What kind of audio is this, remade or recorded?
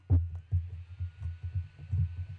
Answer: recorded